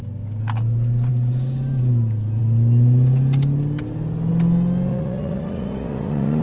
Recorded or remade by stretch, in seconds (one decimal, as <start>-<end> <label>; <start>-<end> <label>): 0.0-4.9 recorded; 4.9-6.4 remade